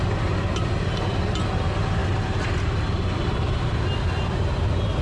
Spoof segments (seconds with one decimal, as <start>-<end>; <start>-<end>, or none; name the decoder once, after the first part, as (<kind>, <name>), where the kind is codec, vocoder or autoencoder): none